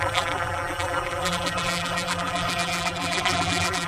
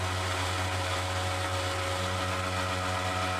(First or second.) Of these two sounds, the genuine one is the second